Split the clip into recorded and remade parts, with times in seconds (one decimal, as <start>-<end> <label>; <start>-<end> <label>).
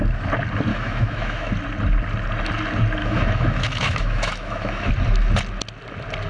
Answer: 0.0-0.7 recorded; 0.7-1.5 remade; 1.5-3.0 recorded; 3.0-4.9 remade; 4.9-6.3 recorded